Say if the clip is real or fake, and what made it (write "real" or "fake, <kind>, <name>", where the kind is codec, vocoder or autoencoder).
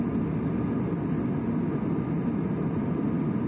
real